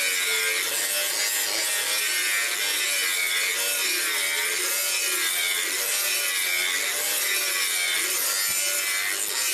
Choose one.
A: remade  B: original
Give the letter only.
B